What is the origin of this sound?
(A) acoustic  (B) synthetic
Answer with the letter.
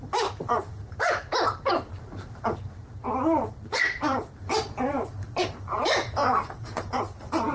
B